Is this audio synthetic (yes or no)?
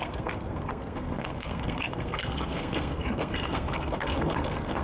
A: yes